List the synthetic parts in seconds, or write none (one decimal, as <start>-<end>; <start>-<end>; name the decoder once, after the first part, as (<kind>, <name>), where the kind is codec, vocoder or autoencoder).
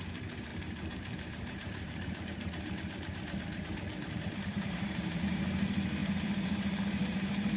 0.0-7.6 (vocoder, BigVGAN v2)